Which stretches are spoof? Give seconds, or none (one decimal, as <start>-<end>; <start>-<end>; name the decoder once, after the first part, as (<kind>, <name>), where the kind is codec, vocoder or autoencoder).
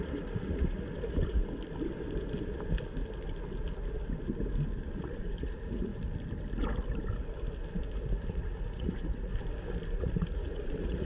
0.0-1.4 (vocoder, Vocos); 4.9-5.9; 8.3-9.3; 9.9-11.1